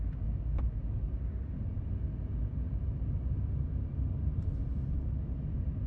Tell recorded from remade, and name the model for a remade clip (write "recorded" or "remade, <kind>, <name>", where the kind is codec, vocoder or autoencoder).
recorded